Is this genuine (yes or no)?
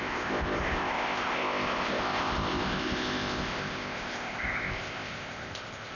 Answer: no